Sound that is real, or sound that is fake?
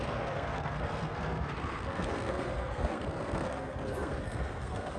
fake